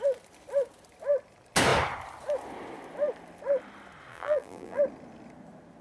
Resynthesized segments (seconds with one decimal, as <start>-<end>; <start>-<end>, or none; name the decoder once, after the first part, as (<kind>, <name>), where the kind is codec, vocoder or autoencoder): 4.1-4.8 (vocoder, BigVGAN v2)